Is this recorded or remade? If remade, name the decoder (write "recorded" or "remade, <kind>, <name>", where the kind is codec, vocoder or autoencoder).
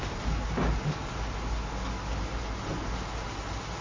recorded